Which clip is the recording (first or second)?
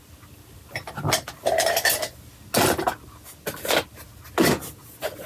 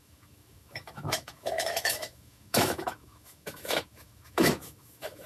first